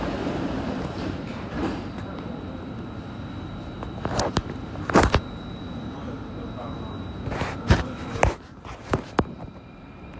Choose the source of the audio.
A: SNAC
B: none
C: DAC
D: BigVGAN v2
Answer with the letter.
D